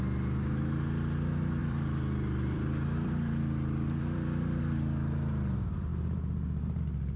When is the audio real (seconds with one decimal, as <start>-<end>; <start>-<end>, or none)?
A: 0.0-1.6; 4.6-5.9; 6.8-7.2